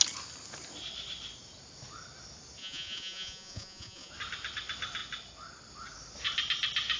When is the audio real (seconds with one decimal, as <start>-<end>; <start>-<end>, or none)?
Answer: 0.0-2.6; 4.1-7.0